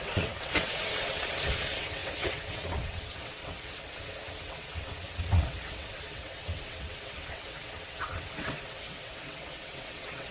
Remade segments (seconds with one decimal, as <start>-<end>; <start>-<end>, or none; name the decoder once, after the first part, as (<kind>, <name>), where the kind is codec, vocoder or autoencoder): 0.0-10.3 (vocoder, WaveNeXt)